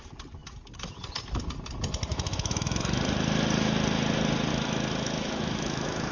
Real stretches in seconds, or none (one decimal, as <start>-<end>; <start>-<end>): 0.0-2.1; 3.0-4.5